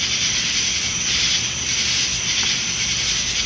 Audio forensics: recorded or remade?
recorded